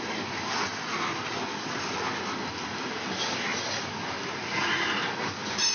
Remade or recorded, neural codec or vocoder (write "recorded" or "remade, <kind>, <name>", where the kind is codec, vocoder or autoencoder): recorded